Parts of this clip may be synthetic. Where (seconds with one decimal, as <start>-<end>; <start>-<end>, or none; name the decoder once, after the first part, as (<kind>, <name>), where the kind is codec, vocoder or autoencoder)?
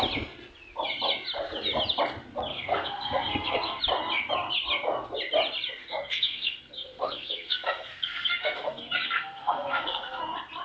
2.5-3.8 (codec, SNAC); 5.8-10.2